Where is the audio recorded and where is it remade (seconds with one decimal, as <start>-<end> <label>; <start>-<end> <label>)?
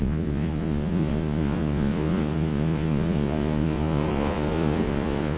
0.0-5.4 remade